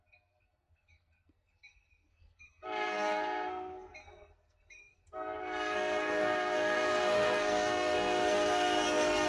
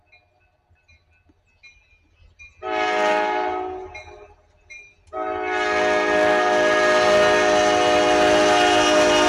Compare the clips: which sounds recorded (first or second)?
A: second